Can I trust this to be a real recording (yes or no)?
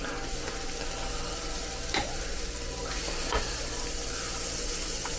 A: yes